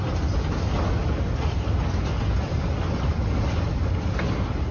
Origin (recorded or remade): recorded